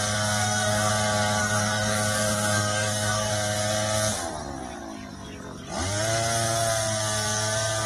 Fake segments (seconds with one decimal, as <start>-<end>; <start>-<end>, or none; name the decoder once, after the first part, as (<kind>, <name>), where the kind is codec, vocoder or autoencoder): 0.4-0.9 (codec, DAC); 1.4-3.3